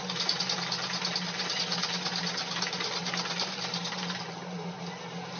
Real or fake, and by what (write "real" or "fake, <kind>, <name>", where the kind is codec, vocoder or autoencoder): real